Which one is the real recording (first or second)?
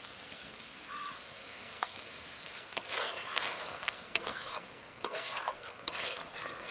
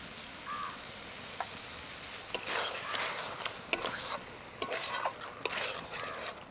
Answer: second